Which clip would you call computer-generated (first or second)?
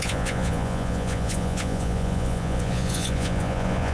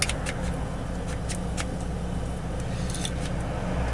first